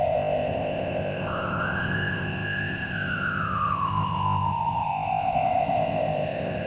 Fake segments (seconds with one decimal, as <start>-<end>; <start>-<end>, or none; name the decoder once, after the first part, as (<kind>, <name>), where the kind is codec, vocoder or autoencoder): 0.0-6.7 (codec, ZipCodec)